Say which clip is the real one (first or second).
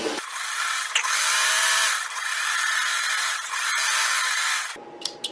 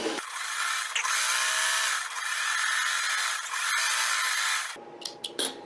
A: second